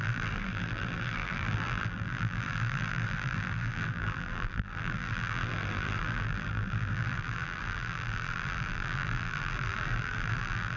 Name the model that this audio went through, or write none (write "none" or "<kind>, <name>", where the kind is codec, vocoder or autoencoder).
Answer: vocoder, BigVGAN v2